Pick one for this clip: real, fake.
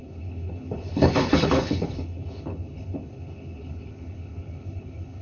fake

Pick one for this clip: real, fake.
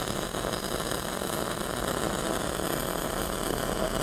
real